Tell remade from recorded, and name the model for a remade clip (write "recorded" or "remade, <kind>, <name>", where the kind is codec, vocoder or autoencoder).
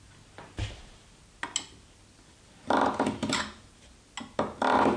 recorded